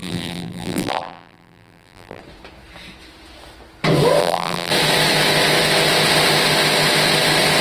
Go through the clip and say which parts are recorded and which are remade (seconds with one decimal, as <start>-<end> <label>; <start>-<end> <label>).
0.0-2.2 remade; 2.2-4.2 recorded; 4.2-4.7 remade; 4.7-7.6 recorded